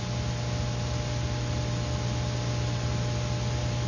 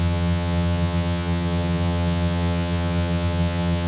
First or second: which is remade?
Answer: second